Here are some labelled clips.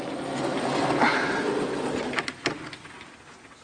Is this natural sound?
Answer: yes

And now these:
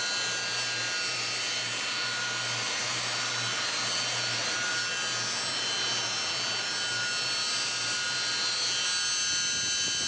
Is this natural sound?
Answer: yes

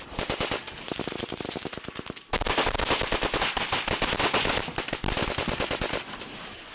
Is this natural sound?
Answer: yes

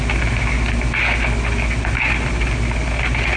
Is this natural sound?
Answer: yes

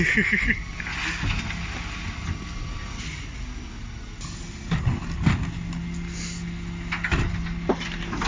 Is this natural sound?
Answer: yes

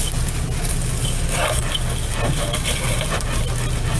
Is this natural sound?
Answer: yes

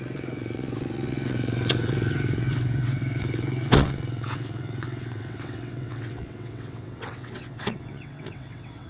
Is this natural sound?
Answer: no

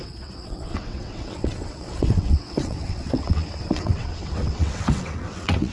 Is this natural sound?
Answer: no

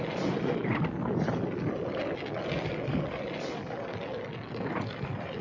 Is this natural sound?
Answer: yes